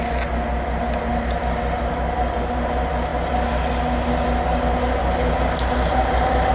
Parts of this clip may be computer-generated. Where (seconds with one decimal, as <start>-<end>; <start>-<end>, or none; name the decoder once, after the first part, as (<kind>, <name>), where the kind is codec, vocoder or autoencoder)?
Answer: none